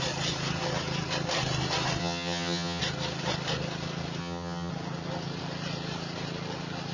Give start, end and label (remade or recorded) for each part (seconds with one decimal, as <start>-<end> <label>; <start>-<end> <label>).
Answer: 0.0-2.0 recorded; 2.0-2.8 remade; 2.8-4.2 recorded; 4.2-4.7 remade; 4.7-6.9 recorded